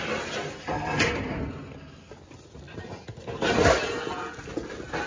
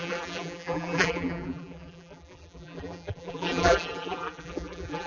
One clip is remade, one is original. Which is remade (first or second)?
second